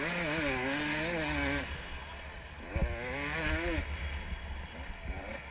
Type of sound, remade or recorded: recorded